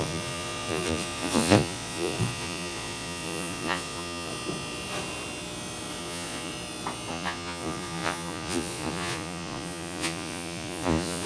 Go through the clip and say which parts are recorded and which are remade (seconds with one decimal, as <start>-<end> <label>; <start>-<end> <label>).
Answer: 0.0-4.3 remade; 4.3-6.0 recorded; 6.0-6.5 remade; 6.5-7.1 recorded; 7.1-11.3 remade